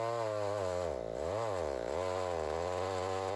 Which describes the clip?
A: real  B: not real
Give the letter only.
A